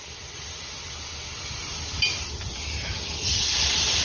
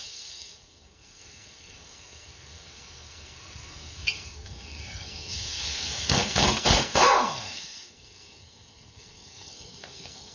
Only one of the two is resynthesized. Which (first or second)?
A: second